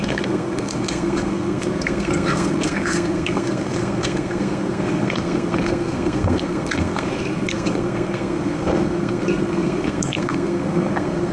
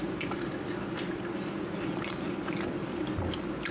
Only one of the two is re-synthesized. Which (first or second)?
first